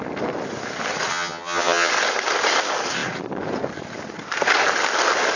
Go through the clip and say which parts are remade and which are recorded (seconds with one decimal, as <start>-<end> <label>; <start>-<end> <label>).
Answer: 0.0-1.1 recorded; 1.1-1.9 remade; 1.9-5.4 recorded

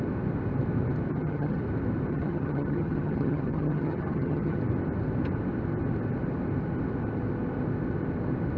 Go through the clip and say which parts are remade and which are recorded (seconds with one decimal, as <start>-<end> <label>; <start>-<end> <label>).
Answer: 0.0-1.1 recorded; 1.1-1.6 remade; 1.6-2.1 recorded; 2.1-4.6 remade; 4.6-8.6 recorded

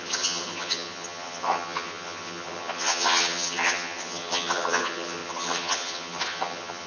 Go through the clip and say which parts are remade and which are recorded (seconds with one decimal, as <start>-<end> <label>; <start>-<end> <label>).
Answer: 0.0-6.9 remade

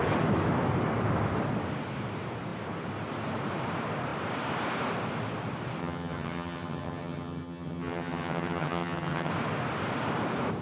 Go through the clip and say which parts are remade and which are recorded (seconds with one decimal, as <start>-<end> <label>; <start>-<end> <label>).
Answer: 0.0-5.8 recorded; 5.8-9.3 remade; 9.3-10.6 recorded

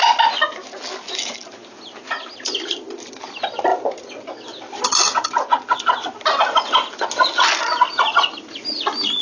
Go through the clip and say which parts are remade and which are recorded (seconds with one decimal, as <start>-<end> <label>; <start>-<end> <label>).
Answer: 0.0-9.2 recorded

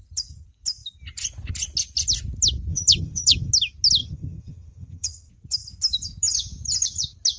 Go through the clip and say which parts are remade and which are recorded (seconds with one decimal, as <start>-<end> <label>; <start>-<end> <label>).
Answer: 0.0-2.7 recorded; 2.7-3.5 remade; 3.5-4.0 recorded; 4.0-5.3 remade; 5.3-7.4 recorded

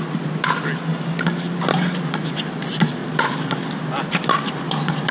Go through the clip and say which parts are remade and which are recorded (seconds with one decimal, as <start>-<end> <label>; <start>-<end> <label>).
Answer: 0.0-5.1 recorded

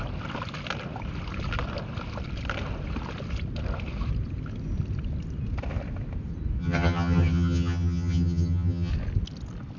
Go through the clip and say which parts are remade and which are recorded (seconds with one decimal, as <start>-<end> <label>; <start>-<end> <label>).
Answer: 0.0-6.6 recorded; 6.6-8.9 remade; 8.9-9.8 recorded